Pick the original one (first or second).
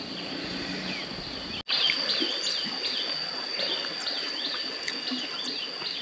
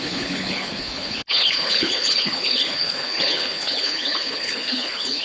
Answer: first